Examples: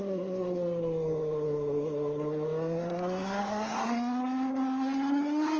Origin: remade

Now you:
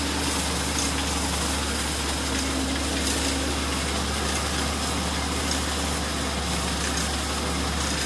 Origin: recorded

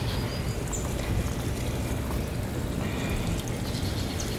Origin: recorded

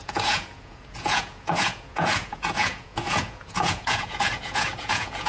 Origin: remade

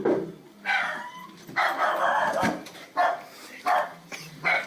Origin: recorded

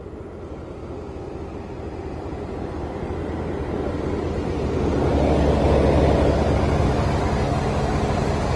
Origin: recorded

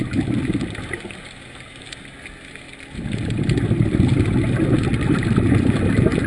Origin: recorded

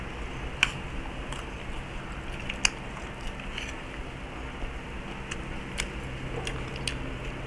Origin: recorded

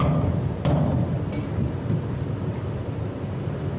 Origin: recorded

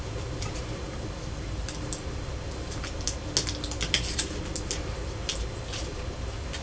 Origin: recorded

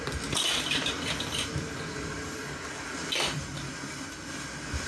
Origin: remade